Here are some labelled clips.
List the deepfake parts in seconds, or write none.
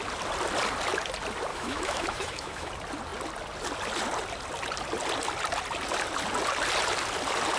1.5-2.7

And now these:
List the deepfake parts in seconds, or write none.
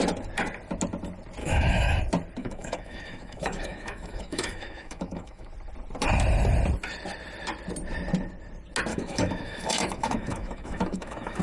1.4-2.0; 2.4-5.5; 8.9-11.4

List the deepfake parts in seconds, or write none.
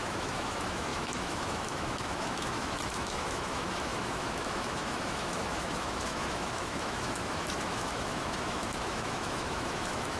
0.0-10.2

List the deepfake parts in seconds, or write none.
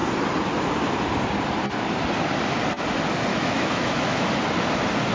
3.3-4.3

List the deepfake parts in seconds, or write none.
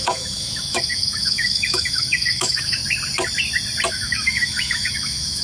0.0-2.8; 3.9-5.4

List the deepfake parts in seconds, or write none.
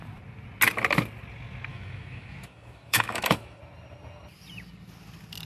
1.7-3.6